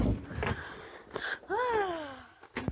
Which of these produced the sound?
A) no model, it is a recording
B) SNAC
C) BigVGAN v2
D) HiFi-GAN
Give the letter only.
A